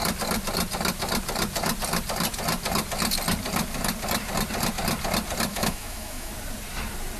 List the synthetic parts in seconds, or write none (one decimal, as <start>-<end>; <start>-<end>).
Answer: 5.5-6.3